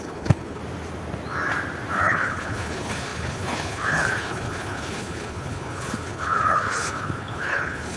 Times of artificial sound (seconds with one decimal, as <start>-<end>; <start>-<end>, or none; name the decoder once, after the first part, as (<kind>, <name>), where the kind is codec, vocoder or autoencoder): 0.0-0.6 (codec, HILCodec); 2.0-8.0